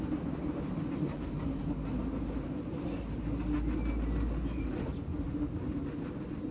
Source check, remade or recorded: recorded